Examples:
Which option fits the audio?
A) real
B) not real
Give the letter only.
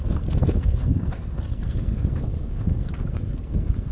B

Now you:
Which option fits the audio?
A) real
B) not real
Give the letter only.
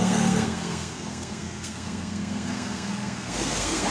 B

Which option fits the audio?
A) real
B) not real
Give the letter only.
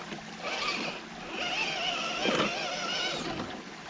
A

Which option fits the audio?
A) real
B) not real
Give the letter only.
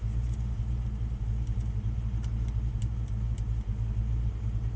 A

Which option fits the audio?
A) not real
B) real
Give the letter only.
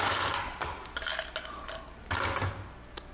B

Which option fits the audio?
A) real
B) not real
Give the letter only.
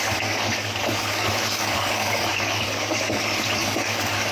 B